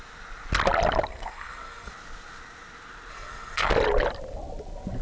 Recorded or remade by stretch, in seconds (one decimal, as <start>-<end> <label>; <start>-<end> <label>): 0.0-1.1 recorded; 1.1-1.9 remade; 1.9-3.1 recorded; 3.1-3.7 remade; 3.7-5.0 recorded